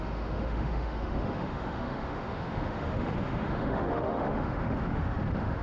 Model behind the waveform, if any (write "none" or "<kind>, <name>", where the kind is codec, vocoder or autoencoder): autoencoder, DAC-VAE